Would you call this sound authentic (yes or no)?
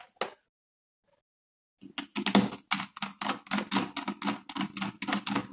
yes